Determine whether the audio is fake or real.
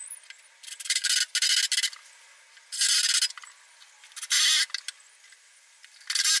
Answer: real